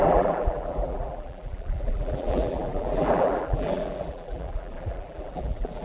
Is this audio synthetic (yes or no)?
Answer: yes